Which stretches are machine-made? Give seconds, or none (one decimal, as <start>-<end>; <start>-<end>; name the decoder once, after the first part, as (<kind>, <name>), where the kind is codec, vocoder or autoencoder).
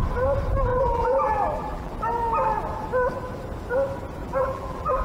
0.7-1.9 (vocoder, BigVGAN v2); 4.2-5.0